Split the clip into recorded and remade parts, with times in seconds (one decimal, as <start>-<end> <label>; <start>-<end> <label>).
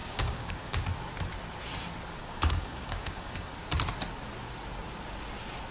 0.0-0.8 remade; 0.8-2.2 recorded; 2.2-3.5 remade; 3.5-5.7 recorded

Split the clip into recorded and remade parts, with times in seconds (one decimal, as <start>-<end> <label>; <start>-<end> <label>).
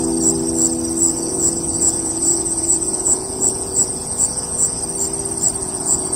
0.0-1.1 recorded; 1.1-4.8 remade; 4.8-5.6 recorded; 5.6-6.2 remade